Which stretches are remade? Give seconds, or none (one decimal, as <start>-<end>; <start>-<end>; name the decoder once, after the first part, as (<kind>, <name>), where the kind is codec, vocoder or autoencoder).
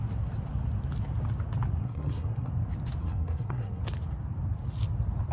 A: 1.8-2.5 (codec, SNAC); 3.0-3.8